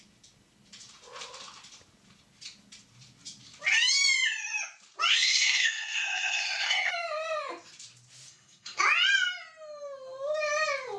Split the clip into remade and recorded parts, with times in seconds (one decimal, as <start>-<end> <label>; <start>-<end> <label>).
0.0-5.1 recorded; 5.1-6.9 remade; 6.9-8.3 recorded; 8.3-8.8 remade; 8.8-11.0 recorded